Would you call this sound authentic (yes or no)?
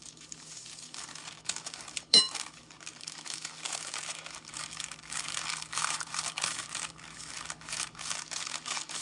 no